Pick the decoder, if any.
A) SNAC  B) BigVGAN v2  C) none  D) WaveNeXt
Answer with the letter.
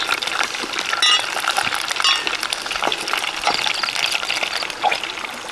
C